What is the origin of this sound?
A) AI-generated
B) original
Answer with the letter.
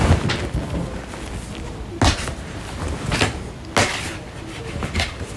B